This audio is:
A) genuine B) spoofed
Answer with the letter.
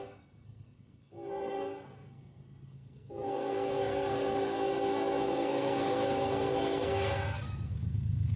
B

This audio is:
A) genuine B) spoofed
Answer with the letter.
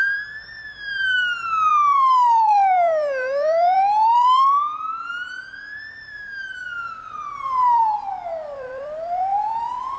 B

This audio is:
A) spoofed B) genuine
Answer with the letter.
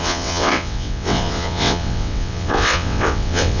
A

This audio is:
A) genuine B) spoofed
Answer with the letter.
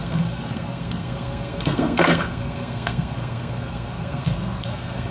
B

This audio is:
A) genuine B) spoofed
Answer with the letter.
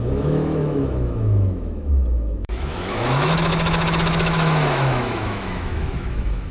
B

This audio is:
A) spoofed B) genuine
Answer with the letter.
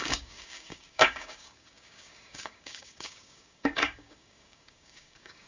A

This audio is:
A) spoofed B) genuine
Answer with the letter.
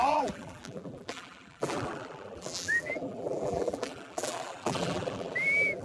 A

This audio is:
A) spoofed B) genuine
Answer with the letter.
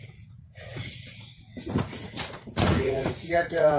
A